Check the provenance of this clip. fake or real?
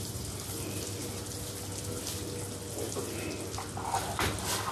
real